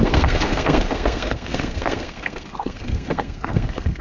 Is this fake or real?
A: fake